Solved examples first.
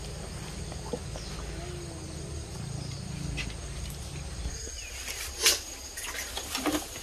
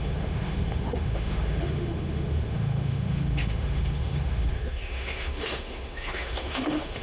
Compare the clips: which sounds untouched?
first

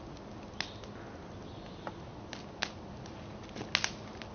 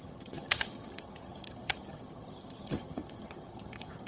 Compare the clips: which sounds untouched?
first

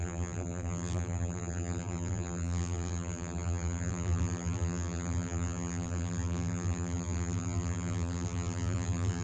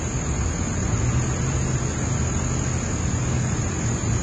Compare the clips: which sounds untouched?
second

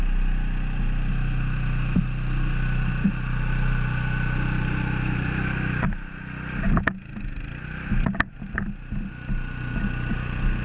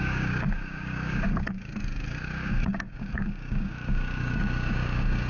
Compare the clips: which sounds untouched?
first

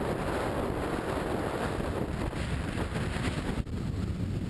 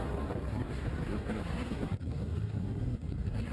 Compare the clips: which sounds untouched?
first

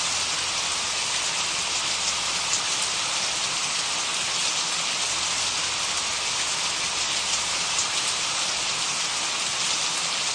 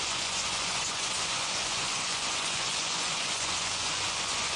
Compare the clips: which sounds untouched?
first